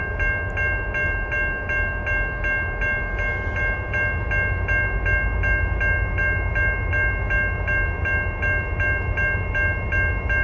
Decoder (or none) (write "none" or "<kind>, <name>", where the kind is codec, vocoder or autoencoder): none